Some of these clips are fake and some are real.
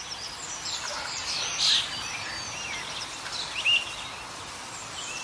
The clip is real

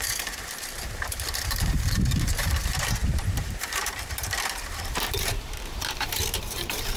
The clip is fake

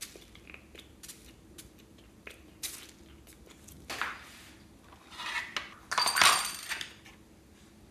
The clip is real